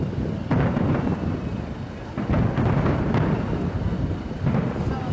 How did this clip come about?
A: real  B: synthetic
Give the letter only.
A